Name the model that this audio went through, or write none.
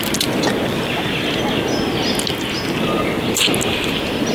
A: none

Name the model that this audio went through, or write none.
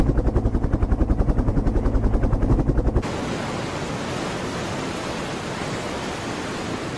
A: none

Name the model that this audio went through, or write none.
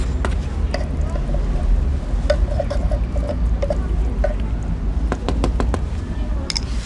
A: none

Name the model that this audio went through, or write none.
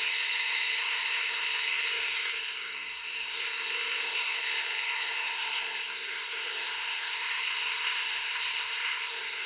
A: codec, SNAC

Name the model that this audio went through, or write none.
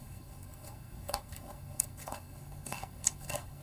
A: codec, SNAC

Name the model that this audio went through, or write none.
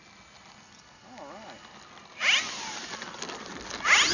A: none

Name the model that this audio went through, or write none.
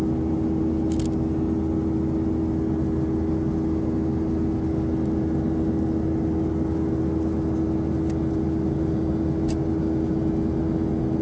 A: none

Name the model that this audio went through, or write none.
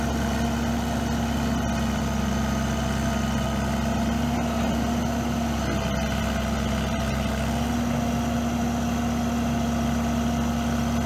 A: none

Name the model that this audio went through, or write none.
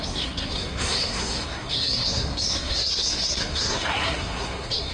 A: codec, SNAC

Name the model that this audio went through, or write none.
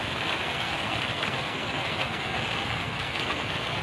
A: codec, SNAC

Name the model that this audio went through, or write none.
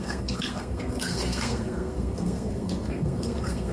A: codec, SNAC